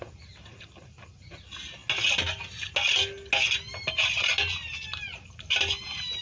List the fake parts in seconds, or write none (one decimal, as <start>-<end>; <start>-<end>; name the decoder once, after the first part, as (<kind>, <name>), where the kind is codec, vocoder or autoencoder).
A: none